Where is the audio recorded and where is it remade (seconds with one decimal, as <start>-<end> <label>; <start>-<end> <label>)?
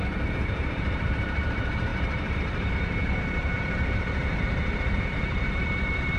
0.0-6.2 remade